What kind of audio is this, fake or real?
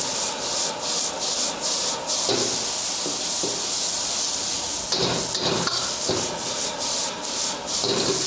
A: real